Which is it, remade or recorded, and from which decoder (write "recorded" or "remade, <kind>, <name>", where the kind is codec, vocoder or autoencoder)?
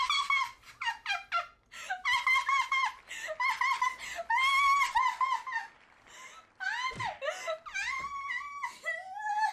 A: recorded